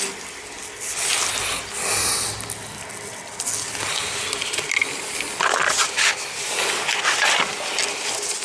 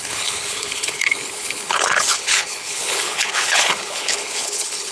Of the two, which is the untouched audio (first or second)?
first